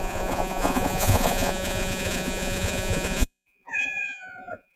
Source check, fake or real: fake